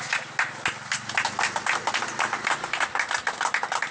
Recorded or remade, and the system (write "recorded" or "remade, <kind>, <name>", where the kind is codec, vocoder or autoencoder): recorded